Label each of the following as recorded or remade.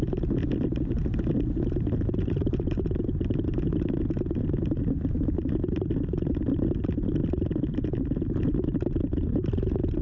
recorded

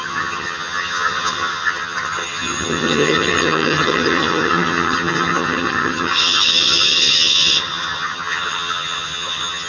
remade